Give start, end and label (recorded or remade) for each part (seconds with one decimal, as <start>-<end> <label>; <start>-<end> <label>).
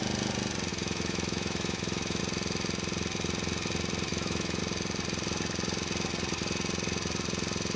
0.0-0.7 recorded; 0.7-2.2 remade; 2.2-4.1 recorded; 4.1-4.6 remade; 4.6-7.8 recorded